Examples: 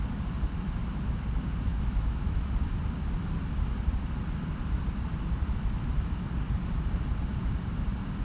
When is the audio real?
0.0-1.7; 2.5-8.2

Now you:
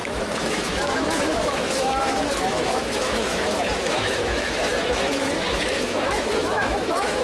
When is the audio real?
none

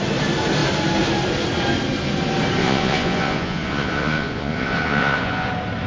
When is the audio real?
0.0-2.6; 5.5-5.9

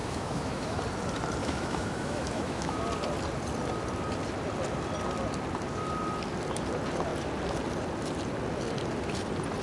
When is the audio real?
0.8-1.4; 2.8-9.6

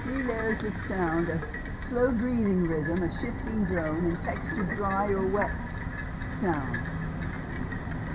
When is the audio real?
0.0-8.1